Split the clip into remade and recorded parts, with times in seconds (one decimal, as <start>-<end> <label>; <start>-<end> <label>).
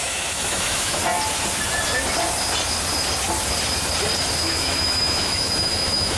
0.0-1.0 remade; 1.0-4.4 recorded; 4.4-6.2 remade